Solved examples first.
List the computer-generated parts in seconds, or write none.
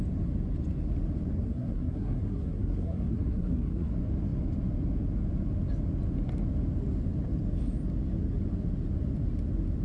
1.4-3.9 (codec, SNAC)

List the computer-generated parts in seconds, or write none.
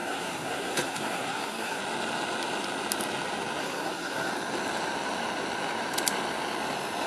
0.0-1.8 (codec, SNAC); 3.6-4.3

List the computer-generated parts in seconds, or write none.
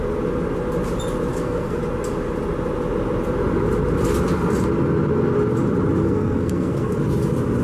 1.3-1.8 (codec, SNAC); 6.0-7.0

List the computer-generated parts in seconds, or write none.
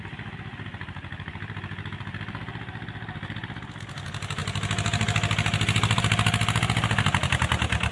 none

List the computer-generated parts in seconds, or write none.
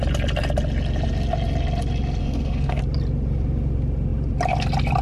2.2-2.8 (codec, SNAC)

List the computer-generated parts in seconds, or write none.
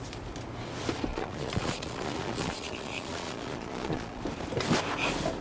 1.1-4.2 (vocoder, Vocos)